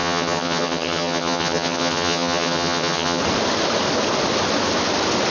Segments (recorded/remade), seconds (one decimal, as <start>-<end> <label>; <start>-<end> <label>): 0.0-3.2 remade; 3.2-5.3 recorded